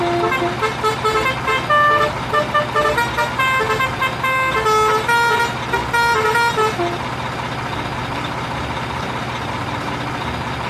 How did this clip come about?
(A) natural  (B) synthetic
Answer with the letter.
A